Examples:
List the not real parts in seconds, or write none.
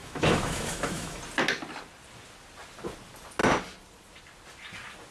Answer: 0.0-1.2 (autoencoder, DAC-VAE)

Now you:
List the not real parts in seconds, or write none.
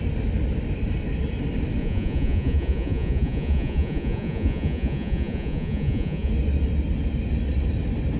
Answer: 1.8-6.3 (vocoder, Vocos)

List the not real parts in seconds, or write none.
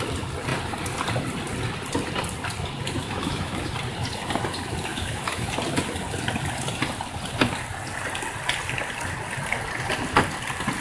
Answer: 3.0-3.7 (autoencoder, DAC-VAE); 4.9-5.5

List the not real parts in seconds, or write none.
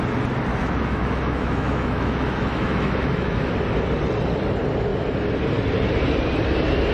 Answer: 0.5-3.5 (autoencoder, DAC-VAE)